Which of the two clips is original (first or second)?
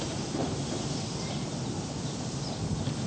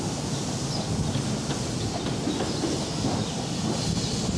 second